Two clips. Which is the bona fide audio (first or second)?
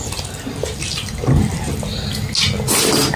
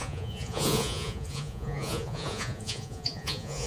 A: first